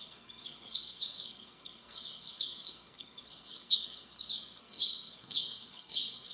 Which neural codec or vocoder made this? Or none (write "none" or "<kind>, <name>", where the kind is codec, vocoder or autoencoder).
codec, SNAC